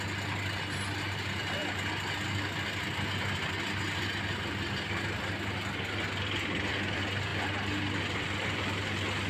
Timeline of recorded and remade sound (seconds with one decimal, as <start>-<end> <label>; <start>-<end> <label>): 0.0-9.3 recorded